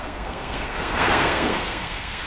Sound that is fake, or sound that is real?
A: fake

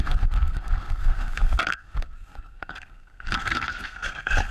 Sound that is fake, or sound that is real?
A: fake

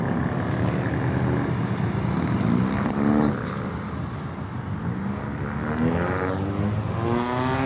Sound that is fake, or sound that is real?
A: real